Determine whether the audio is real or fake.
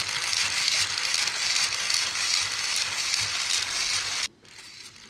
real